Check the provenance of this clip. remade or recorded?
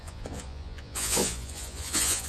remade